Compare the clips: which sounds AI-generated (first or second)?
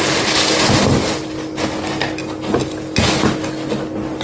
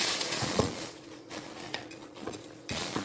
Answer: second